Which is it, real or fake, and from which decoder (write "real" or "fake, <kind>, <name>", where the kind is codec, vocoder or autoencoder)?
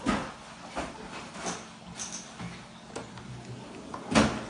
real